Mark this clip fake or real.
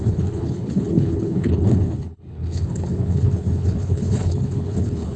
fake